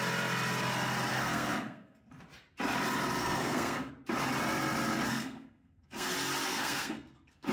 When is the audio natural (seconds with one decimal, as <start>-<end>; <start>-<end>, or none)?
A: 0.0-1.1; 2.1-3.2; 3.9-5.1; 6.1-6.5